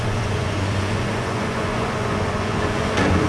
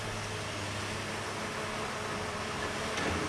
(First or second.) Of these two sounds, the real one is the second